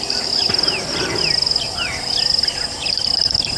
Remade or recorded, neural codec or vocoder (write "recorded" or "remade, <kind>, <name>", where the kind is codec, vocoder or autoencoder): recorded